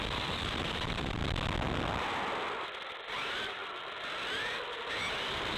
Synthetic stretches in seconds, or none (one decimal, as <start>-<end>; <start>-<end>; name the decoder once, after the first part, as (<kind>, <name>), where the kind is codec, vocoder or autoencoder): 0.0-1.2 (vocoder, BigVGAN v2); 3.0-3.6; 5.0-5.6